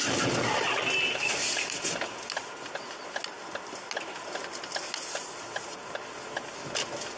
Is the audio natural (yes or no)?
yes